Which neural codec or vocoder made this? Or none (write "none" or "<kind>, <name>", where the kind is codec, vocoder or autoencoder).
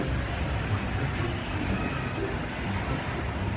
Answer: none